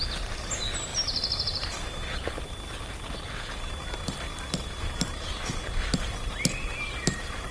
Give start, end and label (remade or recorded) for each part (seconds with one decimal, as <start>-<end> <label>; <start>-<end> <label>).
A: 0.0-0.9 recorded; 0.9-2.4 remade; 2.4-7.5 recorded